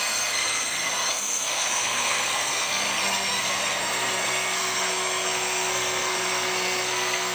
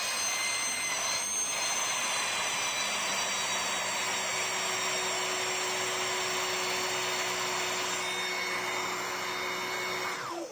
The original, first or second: second